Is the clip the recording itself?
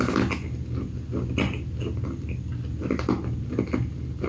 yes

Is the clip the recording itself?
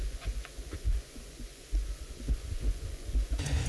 no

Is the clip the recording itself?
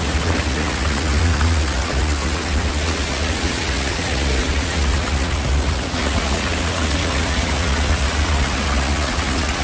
no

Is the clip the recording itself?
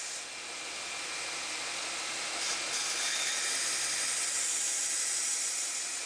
yes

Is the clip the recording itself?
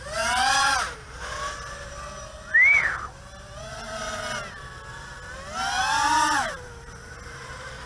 yes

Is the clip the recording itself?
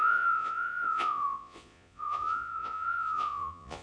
no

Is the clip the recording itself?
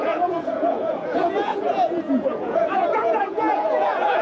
no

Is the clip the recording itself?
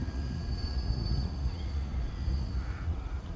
no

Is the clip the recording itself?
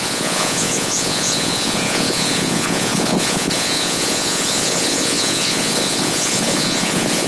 no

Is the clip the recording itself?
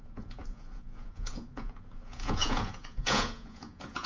no